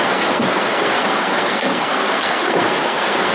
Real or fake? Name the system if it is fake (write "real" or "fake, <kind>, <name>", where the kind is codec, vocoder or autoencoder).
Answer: fake, codec, SNAC